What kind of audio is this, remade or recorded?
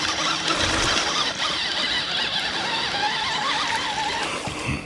recorded